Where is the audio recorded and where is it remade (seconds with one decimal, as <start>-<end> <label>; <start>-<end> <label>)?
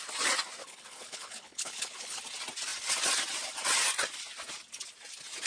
0.0-0.6 recorded; 0.6-2.2 remade; 2.2-5.5 recorded